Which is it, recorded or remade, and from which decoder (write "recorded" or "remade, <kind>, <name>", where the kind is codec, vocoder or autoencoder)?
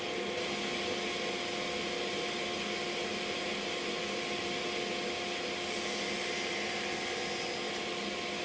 recorded